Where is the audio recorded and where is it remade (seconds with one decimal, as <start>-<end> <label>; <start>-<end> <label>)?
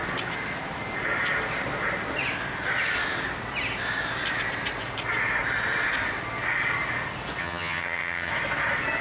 0.0-7.4 recorded; 7.4-8.3 remade; 8.3-9.0 recorded